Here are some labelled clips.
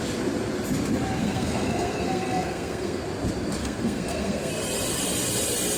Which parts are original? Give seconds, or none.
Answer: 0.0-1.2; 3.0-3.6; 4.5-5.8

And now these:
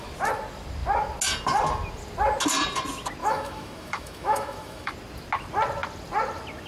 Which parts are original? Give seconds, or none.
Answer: 0.0-3.2; 4.9-6.7

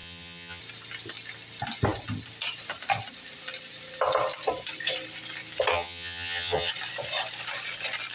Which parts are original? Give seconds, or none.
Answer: 0.6-5.7; 6.7-8.1

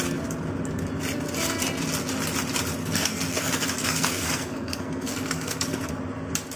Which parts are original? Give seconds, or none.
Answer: 0.0-2.8; 5.9-6.6

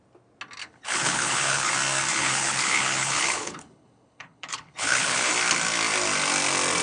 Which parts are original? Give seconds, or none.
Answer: 0.0-0.6; 1.7-2.1; 5.3-6.8

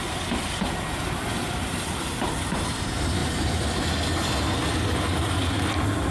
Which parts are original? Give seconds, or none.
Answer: 0.0-6.1

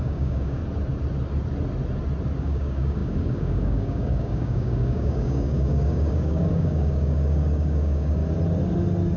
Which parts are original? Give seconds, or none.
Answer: 0.6-2.4; 8.2-9.2

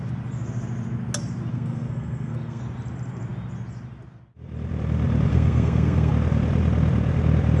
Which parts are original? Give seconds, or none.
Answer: 0.0-1.5; 2.6-5.3; 6.1-7.6